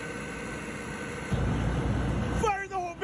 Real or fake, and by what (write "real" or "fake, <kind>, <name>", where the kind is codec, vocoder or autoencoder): real